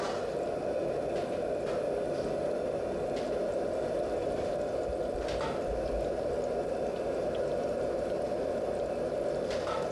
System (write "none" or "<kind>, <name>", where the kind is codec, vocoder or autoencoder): none